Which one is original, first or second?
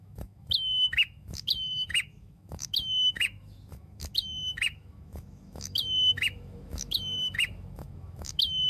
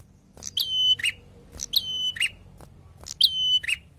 second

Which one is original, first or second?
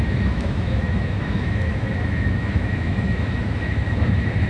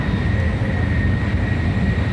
second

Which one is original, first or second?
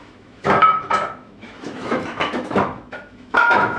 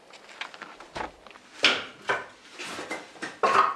second